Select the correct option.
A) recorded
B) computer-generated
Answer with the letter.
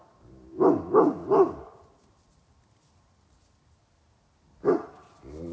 A